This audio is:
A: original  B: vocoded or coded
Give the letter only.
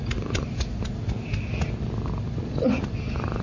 A